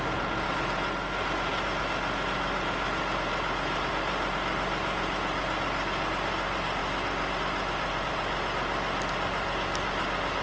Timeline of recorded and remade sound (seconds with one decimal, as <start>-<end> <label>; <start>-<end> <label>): 0.0-10.4 recorded